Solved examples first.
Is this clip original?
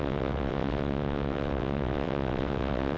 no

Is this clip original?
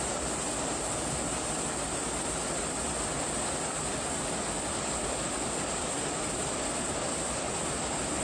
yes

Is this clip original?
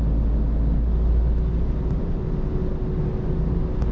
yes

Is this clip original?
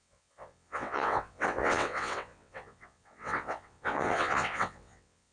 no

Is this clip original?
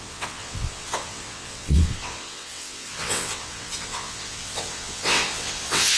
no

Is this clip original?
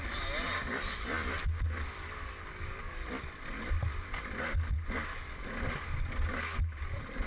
yes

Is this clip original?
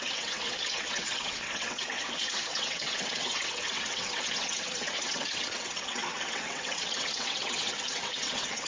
no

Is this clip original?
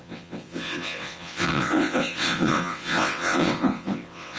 no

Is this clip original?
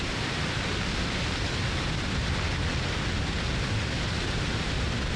yes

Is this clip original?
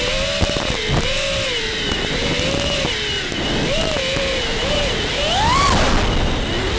yes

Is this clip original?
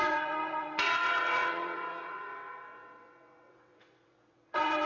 no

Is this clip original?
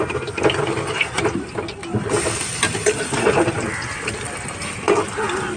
yes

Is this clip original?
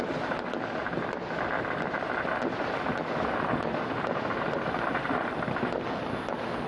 yes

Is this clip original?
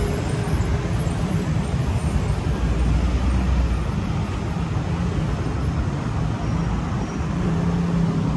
yes